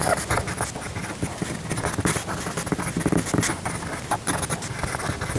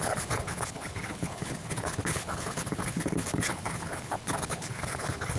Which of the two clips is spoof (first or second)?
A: second